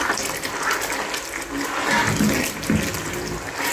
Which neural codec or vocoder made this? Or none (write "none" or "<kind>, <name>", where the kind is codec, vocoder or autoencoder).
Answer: none